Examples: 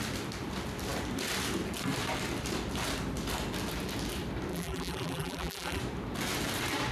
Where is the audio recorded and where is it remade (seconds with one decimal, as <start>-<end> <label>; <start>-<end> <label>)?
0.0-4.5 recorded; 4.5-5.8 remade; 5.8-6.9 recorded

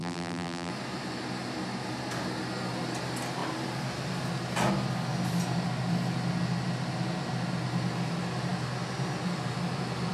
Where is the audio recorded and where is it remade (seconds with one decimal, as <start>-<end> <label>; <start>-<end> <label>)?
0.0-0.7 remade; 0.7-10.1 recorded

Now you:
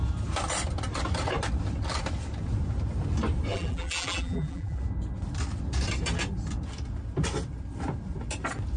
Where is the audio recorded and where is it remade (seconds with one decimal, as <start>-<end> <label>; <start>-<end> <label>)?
0.0-3.5 recorded; 3.5-4.8 remade; 4.8-8.8 recorded

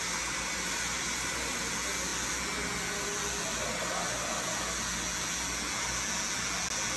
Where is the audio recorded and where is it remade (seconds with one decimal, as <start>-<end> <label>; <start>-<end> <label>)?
0.0-1.6 remade; 1.6-7.0 recorded

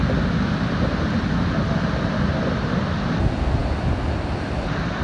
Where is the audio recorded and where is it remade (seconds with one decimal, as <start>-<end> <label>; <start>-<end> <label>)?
0.0-5.0 recorded

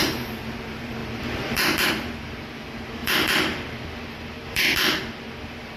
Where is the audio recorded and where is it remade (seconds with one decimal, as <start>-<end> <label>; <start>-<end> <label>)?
0.0-1.0 recorded; 1.0-1.9 remade; 1.9-3.0 recorded; 3.0-5.0 remade; 5.0-5.8 recorded